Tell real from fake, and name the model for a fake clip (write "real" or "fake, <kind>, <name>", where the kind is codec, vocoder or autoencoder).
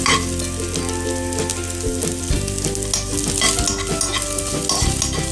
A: real